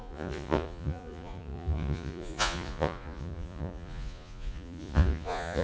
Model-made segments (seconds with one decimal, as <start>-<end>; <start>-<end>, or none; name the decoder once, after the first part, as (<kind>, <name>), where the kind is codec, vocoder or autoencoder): 0.0-5.6 (vocoder, Vocos)